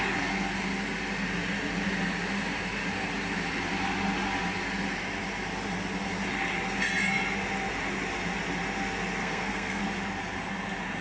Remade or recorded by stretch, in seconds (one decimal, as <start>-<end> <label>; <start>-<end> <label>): 0.0-9.2 recorded; 9.2-9.8 remade; 9.8-11.0 recorded

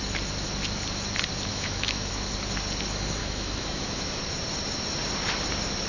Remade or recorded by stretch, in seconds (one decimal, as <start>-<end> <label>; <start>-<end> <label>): 0.0-1.5 recorded; 1.5-2.1 remade; 2.1-3.2 recorded; 3.2-4.2 remade; 4.2-5.9 recorded

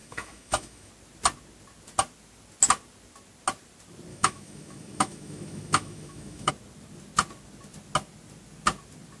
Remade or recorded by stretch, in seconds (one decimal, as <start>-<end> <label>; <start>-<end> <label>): 0.0-0.9 remade; 0.9-4.1 recorded; 4.1-6.5 remade; 6.5-9.2 recorded

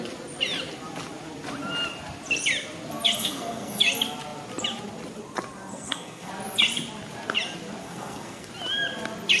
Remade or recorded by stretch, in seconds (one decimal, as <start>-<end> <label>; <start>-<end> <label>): 0.0-3.2 recorded; 3.2-3.8 remade; 3.8-5.7 recorded; 5.7-6.3 remade; 6.3-7.8 recorded; 7.8-8.5 remade; 8.5-9.4 recorded

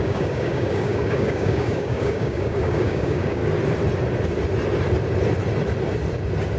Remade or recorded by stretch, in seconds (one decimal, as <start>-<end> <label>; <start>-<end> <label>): 0.0-3.4 remade; 3.4-6.6 recorded

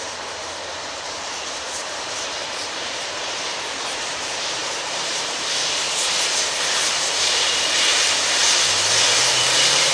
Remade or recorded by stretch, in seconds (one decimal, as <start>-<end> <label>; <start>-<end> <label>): 0.0-8.4 remade; 8.4-9.2 recorded; 9.2-9.9 remade